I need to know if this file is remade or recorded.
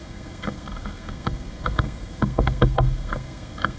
remade